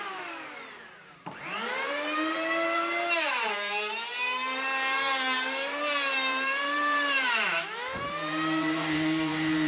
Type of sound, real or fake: fake